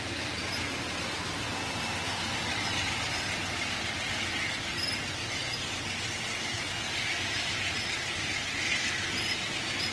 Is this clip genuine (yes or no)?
yes